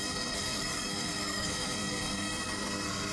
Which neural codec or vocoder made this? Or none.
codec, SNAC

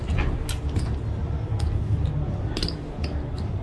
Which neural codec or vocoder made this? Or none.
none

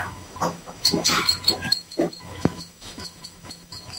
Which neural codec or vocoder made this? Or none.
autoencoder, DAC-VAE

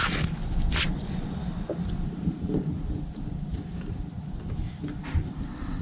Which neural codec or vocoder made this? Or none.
none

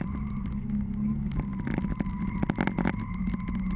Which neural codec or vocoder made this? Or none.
none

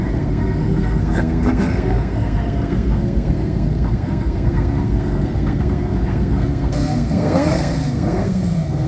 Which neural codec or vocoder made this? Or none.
codec, SNAC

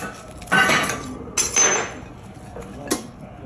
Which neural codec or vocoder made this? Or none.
none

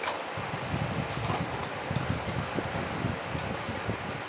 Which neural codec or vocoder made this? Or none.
none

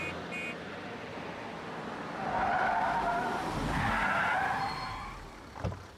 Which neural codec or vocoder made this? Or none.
none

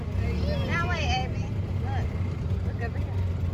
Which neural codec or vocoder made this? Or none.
none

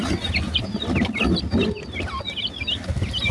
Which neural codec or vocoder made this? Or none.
none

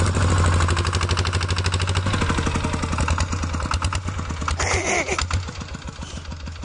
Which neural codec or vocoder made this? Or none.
none